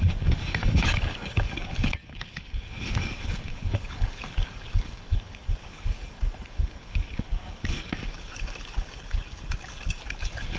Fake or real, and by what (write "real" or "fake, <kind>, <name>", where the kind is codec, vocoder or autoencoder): fake, codec, DAC